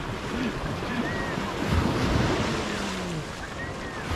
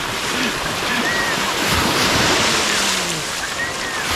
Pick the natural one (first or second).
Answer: first